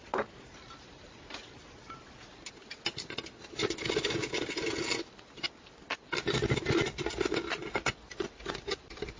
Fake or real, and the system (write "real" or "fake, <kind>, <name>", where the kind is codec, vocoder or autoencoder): real